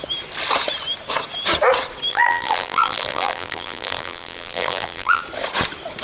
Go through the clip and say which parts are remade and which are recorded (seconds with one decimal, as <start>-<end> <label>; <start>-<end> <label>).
0.0-2.1 recorded; 2.1-5.2 remade; 5.2-6.0 recorded